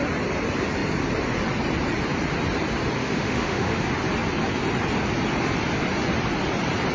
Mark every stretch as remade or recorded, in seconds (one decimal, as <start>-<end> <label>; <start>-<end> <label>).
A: 0.0-3.0 recorded; 3.0-3.8 remade; 3.8-6.9 recorded

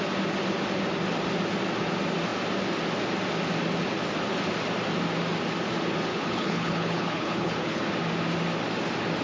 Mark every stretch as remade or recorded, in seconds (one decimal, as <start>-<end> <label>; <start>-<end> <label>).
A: 0.0-6.1 recorded; 6.1-7.8 remade; 7.8-9.2 recorded

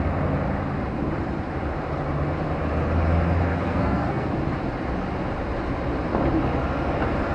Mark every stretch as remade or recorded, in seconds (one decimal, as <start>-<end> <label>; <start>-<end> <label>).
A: 0.0-3.5 recorded; 3.5-4.3 remade; 4.3-7.3 recorded

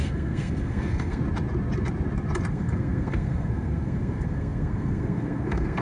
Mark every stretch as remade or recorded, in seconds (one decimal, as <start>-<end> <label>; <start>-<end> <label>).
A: 0.0-1.2 remade; 1.2-2.5 recorded; 2.5-5.8 remade

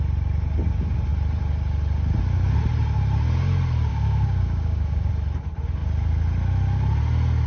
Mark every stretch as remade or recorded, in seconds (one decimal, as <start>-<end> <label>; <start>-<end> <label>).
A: 0.0-3.9 recorded; 3.9-5.1 remade; 5.1-7.5 recorded

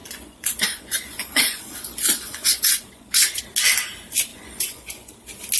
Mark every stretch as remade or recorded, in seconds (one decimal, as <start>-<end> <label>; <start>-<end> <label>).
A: 0.0-3.4 remade; 3.4-4.3 recorded; 4.3-5.1 remade; 5.1-5.6 recorded

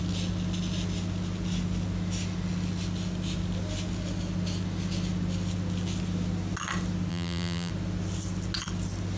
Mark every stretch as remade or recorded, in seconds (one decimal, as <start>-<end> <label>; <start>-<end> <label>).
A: 0.0-7.1 recorded; 7.1-7.7 remade; 7.7-9.2 recorded